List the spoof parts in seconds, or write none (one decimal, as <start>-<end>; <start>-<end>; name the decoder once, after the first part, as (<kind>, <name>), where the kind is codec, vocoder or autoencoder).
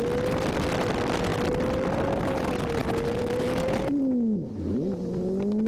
2.8-4.0 (vocoder, BigVGAN v2)